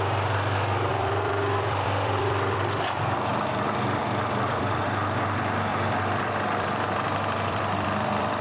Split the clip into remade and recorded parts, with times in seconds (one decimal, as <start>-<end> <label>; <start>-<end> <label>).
0.0-0.9 recorded; 0.9-4.8 remade; 4.8-5.7 recorded; 5.7-8.4 remade